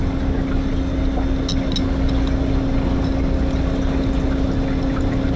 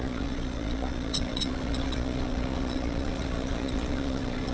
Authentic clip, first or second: first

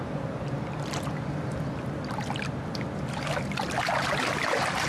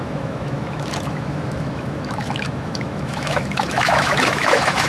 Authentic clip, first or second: first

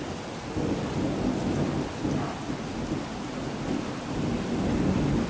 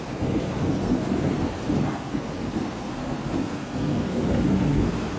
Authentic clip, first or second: first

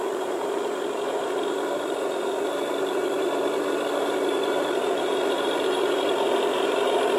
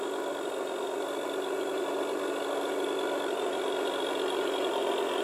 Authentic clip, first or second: second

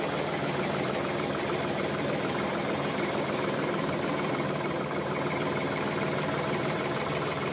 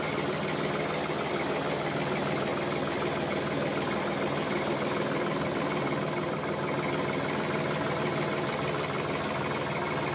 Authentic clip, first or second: second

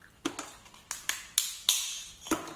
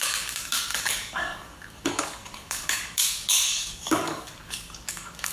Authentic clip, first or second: first